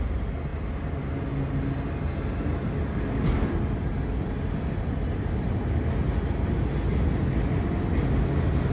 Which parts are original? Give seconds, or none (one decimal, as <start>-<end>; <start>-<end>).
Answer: 0.0-8.7